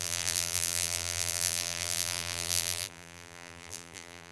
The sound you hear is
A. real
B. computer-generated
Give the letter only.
B